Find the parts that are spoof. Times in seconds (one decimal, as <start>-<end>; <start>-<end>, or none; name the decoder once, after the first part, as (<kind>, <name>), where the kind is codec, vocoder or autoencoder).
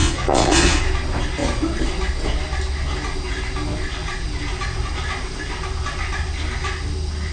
0.0-0.8 (vocoder, Vocos)